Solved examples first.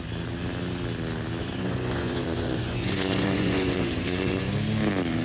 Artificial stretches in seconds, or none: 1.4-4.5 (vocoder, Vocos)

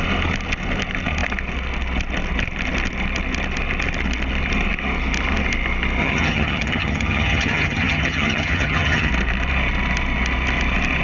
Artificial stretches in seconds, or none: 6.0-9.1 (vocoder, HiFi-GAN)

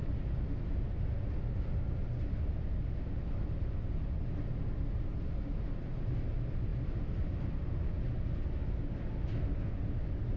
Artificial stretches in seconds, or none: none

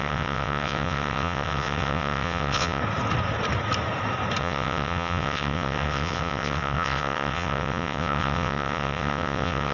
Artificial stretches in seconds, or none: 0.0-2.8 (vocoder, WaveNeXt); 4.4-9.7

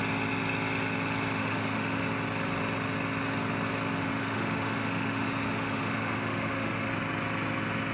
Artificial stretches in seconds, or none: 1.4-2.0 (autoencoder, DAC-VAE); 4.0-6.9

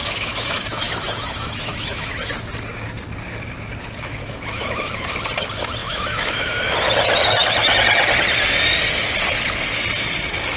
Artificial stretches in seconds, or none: 0.0-2.1 (autoencoder, DAC-VAE); 4.2-5.1; 5.8-6.7